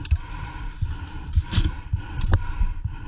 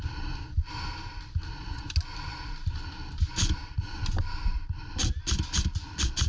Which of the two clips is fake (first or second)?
first